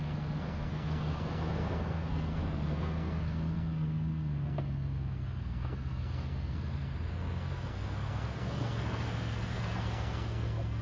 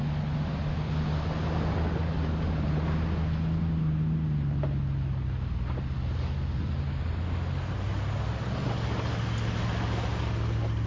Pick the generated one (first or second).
first